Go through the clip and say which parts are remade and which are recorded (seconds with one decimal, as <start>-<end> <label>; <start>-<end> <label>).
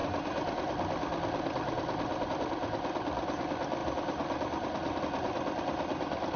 0.0-6.4 recorded